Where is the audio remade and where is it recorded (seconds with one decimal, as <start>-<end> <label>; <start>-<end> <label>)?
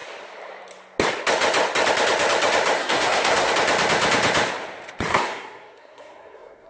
0.0-2.8 recorded; 2.8-3.5 remade; 3.5-5.1 recorded; 5.1-6.7 remade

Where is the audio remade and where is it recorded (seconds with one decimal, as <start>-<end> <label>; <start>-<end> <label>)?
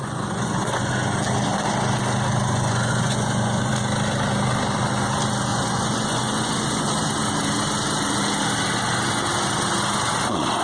0.0-0.9 remade; 0.9-2.4 recorded; 2.4-3.7 remade; 3.7-5.5 recorded; 5.5-6.9 remade; 6.9-10.6 recorded